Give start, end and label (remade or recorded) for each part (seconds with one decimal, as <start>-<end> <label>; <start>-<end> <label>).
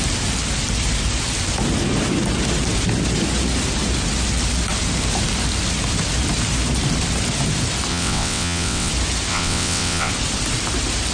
0.0-7.9 recorded; 7.9-8.9 remade; 8.9-9.3 recorded; 9.3-10.1 remade; 10.1-11.1 recorded